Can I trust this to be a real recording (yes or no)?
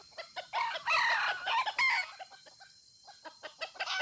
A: yes